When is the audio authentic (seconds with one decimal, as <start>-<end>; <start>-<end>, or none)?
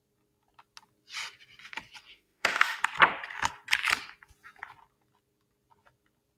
0.0-2.1; 2.8-6.4